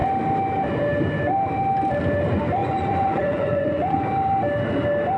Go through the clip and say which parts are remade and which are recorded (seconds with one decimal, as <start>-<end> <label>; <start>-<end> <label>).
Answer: 0.0-2.6 recorded; 2.6-4.0 remade; 4.0-5.2 recorded